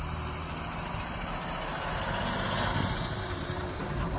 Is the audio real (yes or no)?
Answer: yes